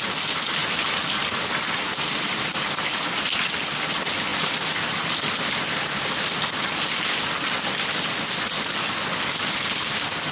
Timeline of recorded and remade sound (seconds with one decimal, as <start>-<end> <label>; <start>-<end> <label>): 0.0-10.3 recorded